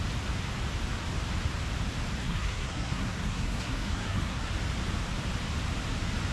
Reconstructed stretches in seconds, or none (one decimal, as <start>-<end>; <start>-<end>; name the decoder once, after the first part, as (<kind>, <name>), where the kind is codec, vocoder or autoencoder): 2.2-4.5 (codec, SNAC)